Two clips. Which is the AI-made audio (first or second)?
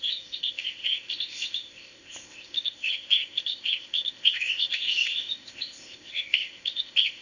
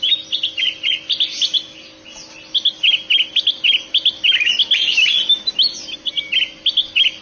first